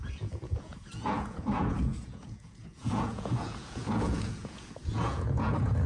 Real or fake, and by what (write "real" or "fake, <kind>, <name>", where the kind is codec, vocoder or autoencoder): fake, vocoder, Vocos